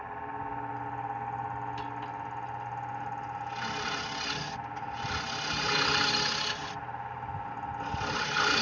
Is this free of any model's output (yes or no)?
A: yes